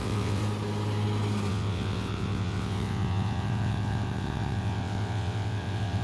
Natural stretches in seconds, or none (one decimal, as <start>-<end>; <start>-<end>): 0.4-1.5